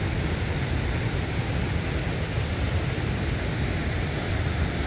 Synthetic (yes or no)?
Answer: no